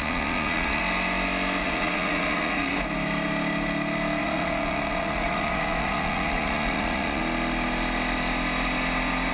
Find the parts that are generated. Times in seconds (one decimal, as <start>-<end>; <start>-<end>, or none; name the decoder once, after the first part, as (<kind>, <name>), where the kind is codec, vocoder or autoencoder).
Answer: 0.0-0.8 (vocoder, Vocos); 1.6-2.7; 4.2-7.2

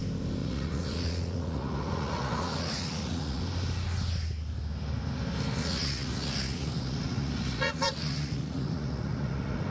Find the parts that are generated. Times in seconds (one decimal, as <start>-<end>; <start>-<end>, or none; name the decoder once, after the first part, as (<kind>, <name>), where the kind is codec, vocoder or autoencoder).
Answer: 0.4-3.4 (vocoder, Vocos); 5.6-9.7

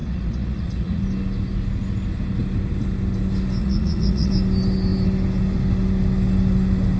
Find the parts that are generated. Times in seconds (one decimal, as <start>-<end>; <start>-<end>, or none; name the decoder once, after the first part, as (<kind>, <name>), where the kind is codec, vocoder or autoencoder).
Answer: 0.0-1.0 (vocoder, Vocos); 3.6-4.3

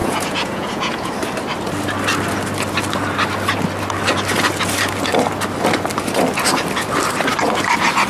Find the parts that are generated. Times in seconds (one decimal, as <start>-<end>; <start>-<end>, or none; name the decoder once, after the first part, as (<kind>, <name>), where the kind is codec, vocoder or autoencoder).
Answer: 0.0-1.1 (vocoder, Vocos)